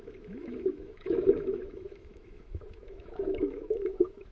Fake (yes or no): yes